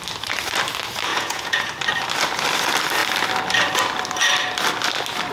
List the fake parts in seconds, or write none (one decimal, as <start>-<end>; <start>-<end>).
1.1-1.7